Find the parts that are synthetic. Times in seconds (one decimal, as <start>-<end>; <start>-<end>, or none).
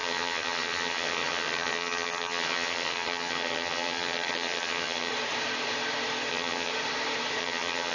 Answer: 0.0-5.1; 6.3-6.7; 7.4-7.9